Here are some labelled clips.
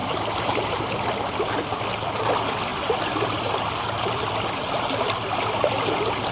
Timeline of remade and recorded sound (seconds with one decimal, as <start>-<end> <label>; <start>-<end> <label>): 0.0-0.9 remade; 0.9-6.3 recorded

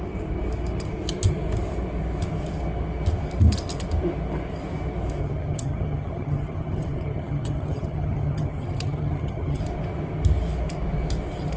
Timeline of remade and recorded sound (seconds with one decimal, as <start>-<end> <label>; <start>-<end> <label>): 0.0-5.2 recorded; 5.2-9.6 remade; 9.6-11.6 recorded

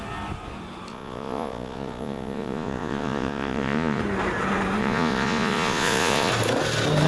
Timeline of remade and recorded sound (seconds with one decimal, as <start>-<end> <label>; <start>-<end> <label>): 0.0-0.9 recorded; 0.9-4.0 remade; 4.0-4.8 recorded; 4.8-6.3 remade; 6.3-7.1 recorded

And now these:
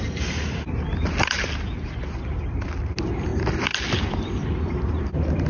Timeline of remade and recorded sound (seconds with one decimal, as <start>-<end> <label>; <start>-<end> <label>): 0.0-0.9 recorded; 0.9-2.0 remade; 2.0-3.3 recorded; 3.3-4.8 remade; 4.8-5.5 recorded

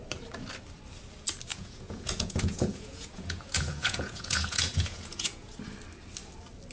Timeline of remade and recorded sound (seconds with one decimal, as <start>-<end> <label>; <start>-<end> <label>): 0.0-1.5 recorded; 1.5-5.5 remade; 5.5-6.7 recorded

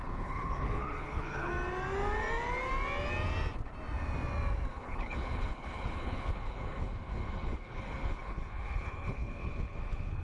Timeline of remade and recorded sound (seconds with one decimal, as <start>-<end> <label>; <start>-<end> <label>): 0.0-1.5 remade; 1.5-4.7 recorded; 4.7-10.2 remade

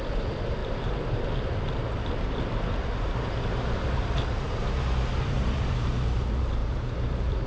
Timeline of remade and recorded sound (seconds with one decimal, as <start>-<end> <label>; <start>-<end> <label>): 0.0-7.5 remade